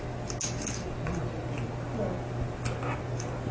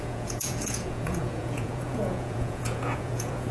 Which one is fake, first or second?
second